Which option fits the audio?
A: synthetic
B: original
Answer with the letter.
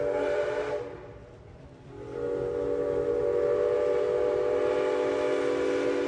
B